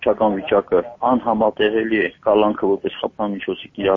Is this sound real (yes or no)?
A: yes